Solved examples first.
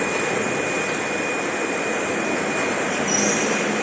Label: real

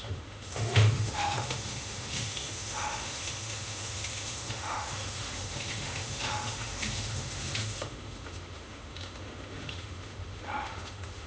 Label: fake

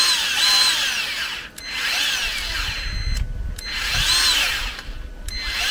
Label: real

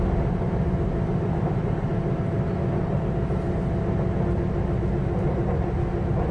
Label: real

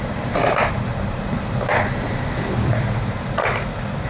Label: real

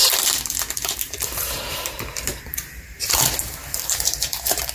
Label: fake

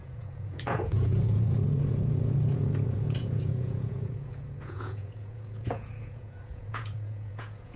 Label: fake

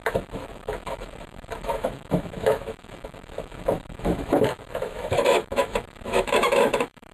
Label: fake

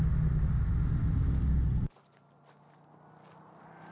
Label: real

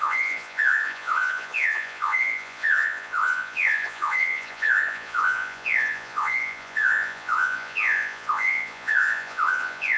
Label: fake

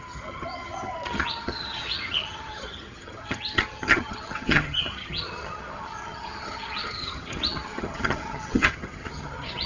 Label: fake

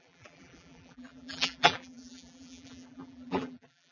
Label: fake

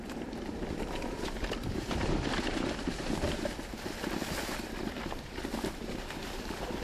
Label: fake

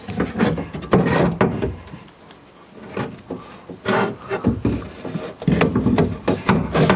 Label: real